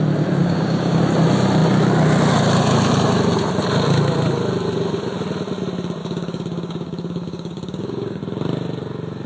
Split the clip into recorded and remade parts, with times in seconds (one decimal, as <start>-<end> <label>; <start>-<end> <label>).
0.0-0.4 recorded; 0.4-1.0 remade; 1.0-6.0 recorded; 6.0-8.2 remade; 8.2-9.3 recorded